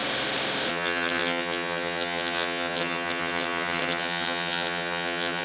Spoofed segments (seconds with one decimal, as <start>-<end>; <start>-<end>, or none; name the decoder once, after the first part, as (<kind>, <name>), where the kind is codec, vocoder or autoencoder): 0.7-5.4 (vocoder, HiFi-GAN)